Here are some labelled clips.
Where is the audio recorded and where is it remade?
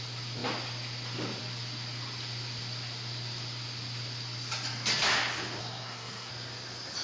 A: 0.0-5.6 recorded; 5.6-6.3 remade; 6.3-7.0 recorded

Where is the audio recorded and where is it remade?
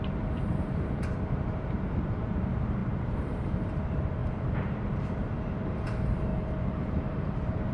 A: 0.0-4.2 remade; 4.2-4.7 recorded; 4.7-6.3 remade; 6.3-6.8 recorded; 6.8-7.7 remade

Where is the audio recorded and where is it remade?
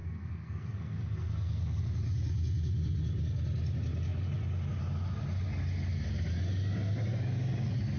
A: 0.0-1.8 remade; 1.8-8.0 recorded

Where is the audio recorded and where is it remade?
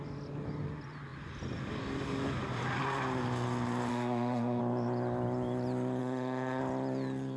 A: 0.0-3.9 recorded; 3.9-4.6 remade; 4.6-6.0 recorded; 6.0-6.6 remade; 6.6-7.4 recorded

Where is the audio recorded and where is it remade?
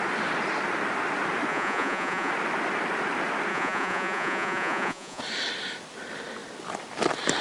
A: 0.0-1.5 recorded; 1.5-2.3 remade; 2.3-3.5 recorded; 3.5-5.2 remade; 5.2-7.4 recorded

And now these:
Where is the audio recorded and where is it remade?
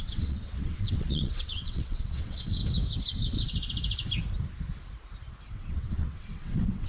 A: 0.0-2.6 remade; 2.6-5.5 recorded; 5.5-6.9 remade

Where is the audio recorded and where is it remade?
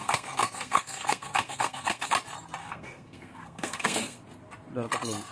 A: 0.0-2.1 remade; 2.1-2.6 recorded; 2.6-4.2 remade; 4.2-5.3 recorded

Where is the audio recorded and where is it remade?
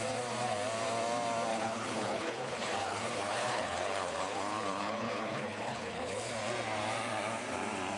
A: 0.0-1.5 recorded; 1.5-6.3 remade; 6.3-8.0 recorded